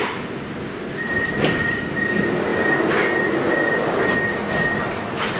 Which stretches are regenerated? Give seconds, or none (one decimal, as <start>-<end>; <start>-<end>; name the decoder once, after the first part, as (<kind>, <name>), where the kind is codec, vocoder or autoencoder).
none